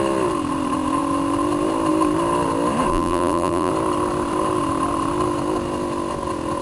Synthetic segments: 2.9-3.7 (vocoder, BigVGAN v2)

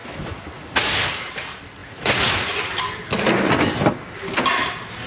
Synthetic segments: 1.8-2.3 (vocoder, BigVGAN v2)